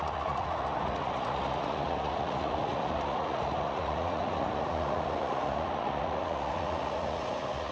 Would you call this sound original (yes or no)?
no